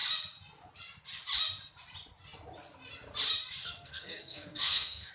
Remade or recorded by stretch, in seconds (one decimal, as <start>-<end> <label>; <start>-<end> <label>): 0.0-3.6 recorded; 3.6-5.1 remade